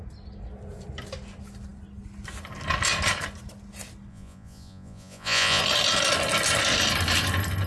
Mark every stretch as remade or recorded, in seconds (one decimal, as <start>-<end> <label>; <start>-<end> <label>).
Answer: 0.0-4.1 recorded; 4.1-5.6 remade; 5.6-7.7 recorded